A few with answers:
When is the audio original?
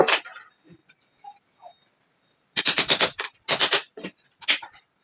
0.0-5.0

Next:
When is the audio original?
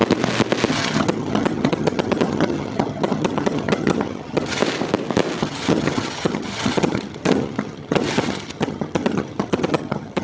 0.0-0.7; 4.6-5.4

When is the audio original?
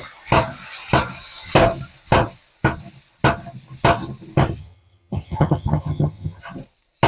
0.0-4.6; 6.4-7.1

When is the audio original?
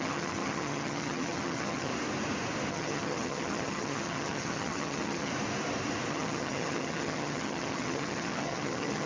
1.9-2.7; 5.3-6.1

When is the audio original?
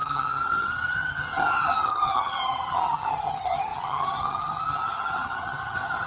none